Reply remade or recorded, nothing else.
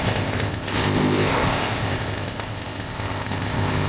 remade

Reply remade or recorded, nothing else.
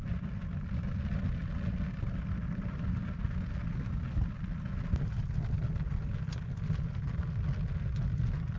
recorded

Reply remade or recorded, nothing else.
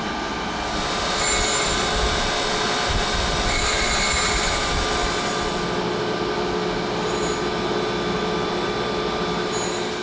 recorded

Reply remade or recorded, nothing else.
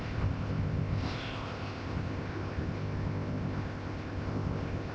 remade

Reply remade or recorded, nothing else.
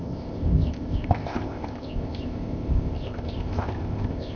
remade